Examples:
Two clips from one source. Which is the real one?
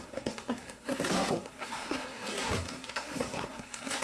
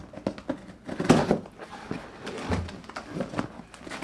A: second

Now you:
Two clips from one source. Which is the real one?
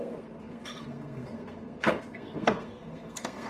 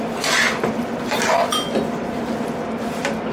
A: second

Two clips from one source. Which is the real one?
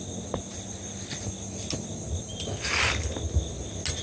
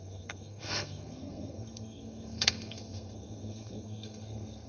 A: first